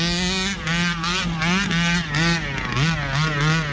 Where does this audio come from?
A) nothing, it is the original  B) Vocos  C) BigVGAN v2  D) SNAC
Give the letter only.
A